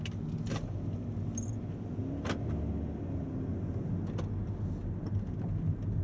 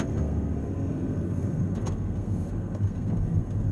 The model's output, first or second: second